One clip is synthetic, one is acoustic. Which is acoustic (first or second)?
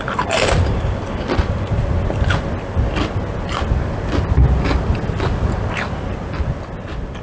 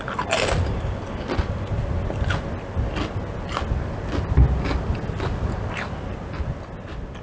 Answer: second